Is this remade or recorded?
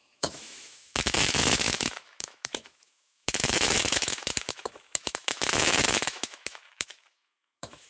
remade